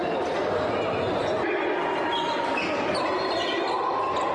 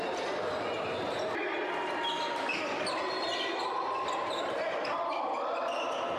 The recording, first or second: second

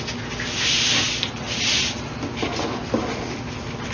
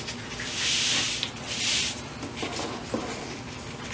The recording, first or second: first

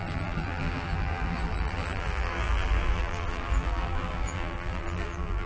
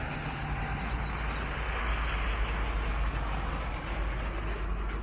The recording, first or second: second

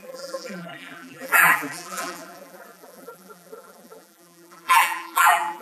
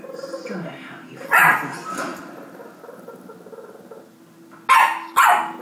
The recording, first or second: second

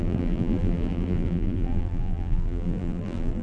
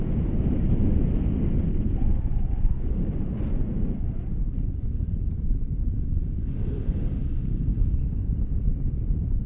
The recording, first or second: second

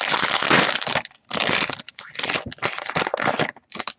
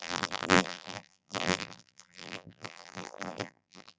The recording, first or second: first